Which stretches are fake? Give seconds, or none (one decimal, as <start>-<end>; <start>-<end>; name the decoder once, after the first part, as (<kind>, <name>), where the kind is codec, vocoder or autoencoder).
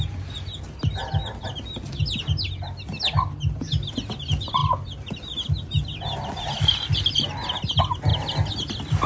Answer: none